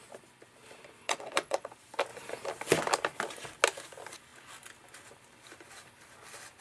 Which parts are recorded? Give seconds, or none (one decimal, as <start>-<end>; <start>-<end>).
0.0-1.0; 1.7-6.6